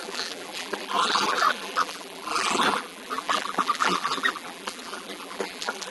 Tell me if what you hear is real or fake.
fake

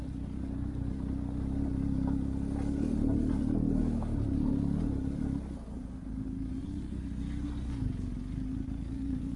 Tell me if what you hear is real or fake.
real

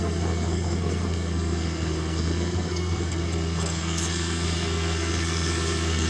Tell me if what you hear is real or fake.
fake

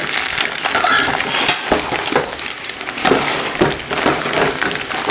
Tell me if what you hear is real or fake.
real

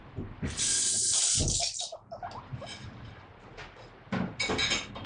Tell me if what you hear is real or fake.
real